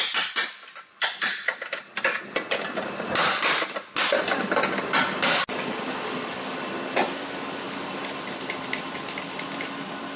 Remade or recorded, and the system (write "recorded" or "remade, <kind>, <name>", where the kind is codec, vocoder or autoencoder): recorded